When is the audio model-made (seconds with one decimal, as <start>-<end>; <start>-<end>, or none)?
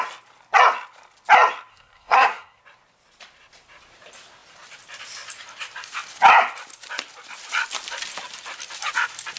1.7-2.6